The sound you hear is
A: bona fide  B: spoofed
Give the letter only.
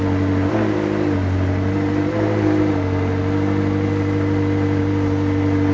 A